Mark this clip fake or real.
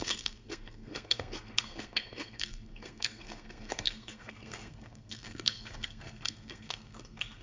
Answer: fake